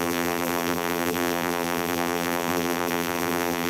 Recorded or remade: remade